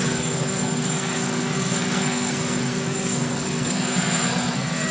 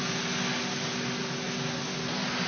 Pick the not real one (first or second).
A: first